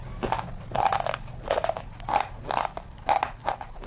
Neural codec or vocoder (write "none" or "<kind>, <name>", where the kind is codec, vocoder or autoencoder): none